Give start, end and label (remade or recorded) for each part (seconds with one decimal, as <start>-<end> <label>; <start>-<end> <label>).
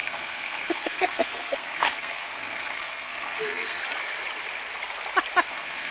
0.0-3.8 remade; 3.8-5.5 recorded; 5.5-5.9 remade